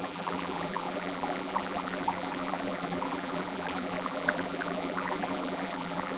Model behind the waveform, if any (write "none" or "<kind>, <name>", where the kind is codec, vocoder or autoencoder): vocoder, BigVGAN v2